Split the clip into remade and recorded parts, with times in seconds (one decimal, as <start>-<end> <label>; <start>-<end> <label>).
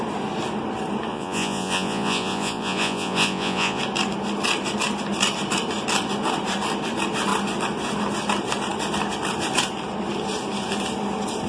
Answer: 0.0-1.1 recorded; 1.1-3.8 remade; 3.8-11.5 recorded